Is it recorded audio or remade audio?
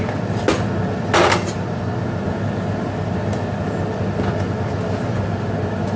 recorded